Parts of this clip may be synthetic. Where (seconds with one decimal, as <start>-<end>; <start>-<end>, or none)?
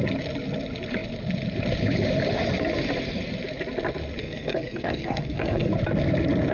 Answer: 4.2-5.7